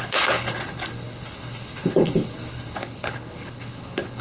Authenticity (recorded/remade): remade